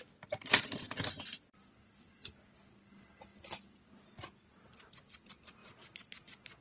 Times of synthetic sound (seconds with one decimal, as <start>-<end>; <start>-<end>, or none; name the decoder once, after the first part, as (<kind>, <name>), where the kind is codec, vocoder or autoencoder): none

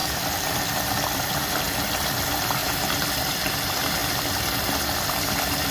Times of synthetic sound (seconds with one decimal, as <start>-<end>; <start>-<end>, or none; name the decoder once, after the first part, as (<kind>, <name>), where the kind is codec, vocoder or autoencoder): 0.0-1.3 (vocoder, BigVGAN v2); 2.6-3.3; 4.0-5.3

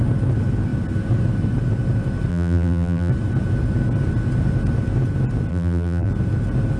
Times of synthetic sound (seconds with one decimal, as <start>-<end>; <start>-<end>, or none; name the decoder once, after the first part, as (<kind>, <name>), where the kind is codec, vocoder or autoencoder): 2.3-3.1 (vocoder, BigVGAN v2); 5.5-6.1

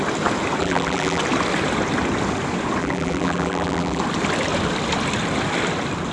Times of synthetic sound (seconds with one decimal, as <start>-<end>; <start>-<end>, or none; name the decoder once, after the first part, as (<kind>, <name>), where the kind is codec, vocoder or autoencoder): 0.6-1.2 (vocoder, BigVGAN v2); 2.8-4.0

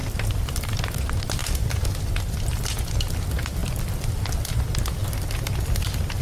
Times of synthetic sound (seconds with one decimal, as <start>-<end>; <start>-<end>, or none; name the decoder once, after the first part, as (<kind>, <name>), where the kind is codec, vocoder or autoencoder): 0.0-0.6 (vocoder, BigVGAN v2); 3.6-4.2

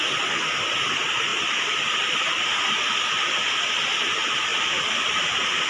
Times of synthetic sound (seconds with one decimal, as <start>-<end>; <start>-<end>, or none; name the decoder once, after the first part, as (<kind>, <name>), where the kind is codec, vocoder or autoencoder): 1.3-3.5 (vocoder, BigVGAN v2); 4.5-5.2

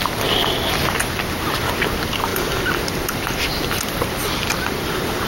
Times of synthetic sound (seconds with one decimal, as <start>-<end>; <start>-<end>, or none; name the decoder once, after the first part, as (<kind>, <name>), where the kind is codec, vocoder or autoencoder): none